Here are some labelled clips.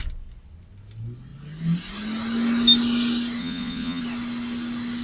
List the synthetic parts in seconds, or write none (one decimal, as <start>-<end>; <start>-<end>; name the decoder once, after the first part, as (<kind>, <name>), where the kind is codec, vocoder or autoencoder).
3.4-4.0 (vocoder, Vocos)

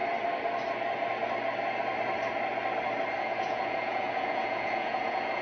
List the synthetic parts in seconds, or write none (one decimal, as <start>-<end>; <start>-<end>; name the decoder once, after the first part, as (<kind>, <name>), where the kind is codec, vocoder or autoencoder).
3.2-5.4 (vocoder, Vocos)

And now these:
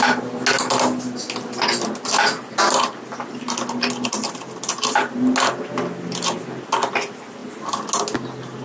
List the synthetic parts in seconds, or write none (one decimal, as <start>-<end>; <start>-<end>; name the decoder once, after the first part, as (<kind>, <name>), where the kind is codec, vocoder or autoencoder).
none

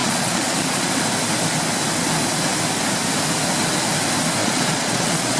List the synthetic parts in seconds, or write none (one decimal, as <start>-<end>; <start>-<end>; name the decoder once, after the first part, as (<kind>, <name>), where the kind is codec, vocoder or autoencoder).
0.0-0.9 (vocoder, Vocos); 4.4-5.4

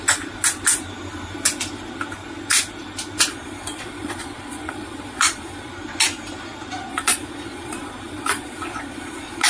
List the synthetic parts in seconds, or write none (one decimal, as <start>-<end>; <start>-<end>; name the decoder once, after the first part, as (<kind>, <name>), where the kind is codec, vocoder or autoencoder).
3.3-5.7 (vocoder, Vocos); 6.9-9.5